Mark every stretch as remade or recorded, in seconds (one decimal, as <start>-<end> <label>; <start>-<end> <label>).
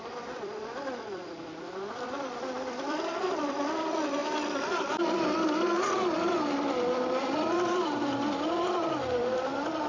0.0-4.2 remade; 4.2-5.9 recorded; 5.9-9.9 remade